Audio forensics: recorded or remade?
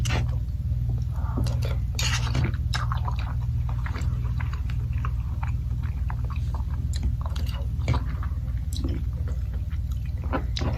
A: recorded